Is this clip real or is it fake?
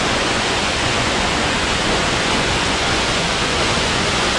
fake